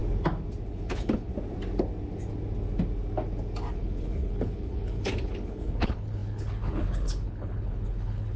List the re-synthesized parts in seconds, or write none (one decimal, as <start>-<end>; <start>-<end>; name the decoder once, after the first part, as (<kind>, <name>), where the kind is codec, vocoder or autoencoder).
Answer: 0.7-1.3 (codec, HILCodec); 3.7-8.4